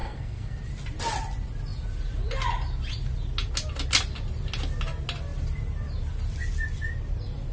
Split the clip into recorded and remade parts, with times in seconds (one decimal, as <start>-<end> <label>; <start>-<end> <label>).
0.0-0.6 remade; 0.6-7.5 recorded